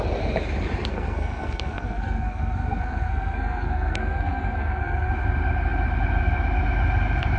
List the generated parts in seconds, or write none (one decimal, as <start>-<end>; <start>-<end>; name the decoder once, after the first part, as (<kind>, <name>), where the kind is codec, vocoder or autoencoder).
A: 0.9-5.1 (codec, SNAC)